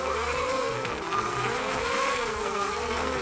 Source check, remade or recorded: remade